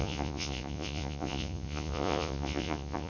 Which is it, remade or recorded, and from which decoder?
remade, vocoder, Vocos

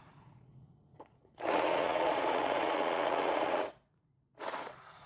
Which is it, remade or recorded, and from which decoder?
remade, vocoder, Vocos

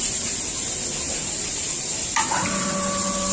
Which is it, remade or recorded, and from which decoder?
recorded